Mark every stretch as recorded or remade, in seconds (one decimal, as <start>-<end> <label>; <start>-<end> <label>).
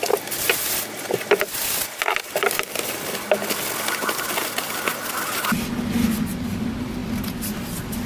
0.0-8.1 recorded